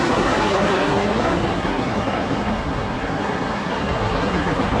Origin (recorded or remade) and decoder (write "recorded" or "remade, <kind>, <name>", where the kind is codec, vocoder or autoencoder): remade, codec, SNAC